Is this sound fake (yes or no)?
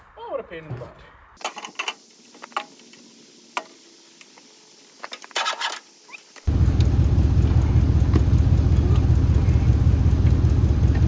no